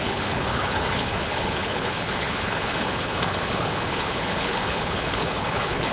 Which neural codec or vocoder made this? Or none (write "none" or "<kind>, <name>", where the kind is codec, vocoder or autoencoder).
codec, HILCodec